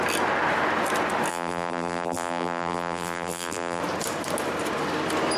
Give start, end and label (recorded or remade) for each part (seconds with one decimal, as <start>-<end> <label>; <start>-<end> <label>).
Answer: 0.0-1.3 recorded; 1.3-3.8 remade; 3.8-5.4 recorded